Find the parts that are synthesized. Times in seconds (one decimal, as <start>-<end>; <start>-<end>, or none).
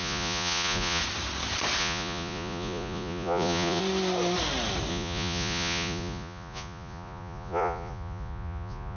0.0-1.0; 1.8-3.8; 4.9-9.0